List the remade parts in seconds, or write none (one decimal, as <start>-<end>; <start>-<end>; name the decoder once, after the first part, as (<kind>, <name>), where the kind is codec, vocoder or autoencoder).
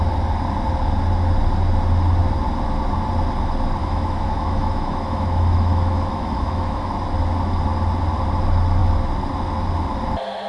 3.8-6.9 (autoencoder, DAC-VAE)